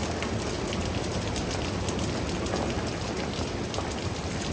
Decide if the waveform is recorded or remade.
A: recorded